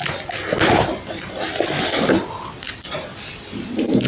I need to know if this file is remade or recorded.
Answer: recorded